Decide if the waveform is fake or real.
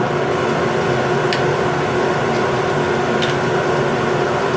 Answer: real